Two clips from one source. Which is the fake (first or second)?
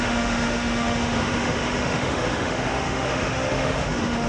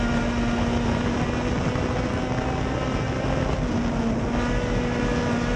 first